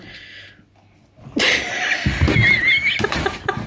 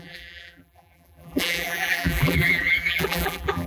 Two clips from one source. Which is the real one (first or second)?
first